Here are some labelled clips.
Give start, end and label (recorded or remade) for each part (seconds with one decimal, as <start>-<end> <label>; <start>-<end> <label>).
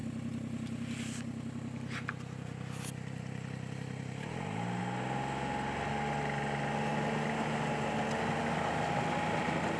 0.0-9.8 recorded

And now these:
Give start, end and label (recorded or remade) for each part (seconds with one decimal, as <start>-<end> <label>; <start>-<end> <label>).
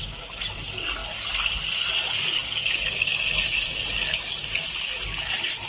0.0-1.0 recorded; 1.0-1.9 remade; 1.9-5.7 recorded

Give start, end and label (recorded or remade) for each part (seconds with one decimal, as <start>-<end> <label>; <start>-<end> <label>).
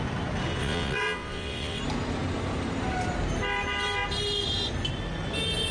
0.0-0.6 recorded; 0.6-1.8 remade; 1.8-5.7 recorded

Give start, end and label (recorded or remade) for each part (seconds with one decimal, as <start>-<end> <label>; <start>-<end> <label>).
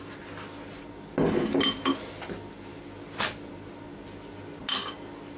0.0-5.4 recorded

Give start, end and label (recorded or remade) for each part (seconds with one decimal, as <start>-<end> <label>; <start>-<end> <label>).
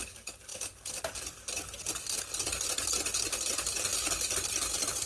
0.0-5.1 recorded